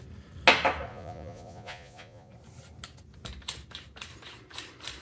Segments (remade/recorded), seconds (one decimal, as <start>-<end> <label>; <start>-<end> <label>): 0.0-0.9 recorded; 0.9-2.3 remade; 2.3-5.0 recorded